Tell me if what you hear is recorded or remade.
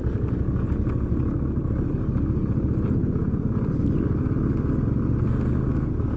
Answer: recorded